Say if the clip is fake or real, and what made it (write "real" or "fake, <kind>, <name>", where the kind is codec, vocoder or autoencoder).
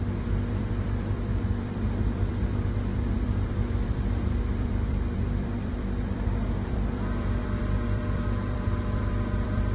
fake, vocoder, BigVGAN v2